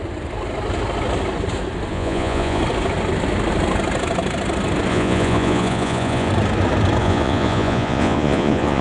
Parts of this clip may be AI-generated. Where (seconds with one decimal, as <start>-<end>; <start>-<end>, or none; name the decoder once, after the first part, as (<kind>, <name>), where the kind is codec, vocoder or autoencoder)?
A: 1.9-2.6 (vocoder, Vocos); 4.9-6.3; 7.0-8.8